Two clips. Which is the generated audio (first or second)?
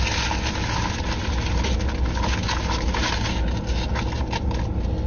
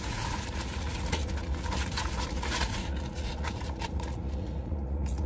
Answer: second